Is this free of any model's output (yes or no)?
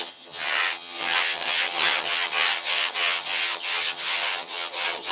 no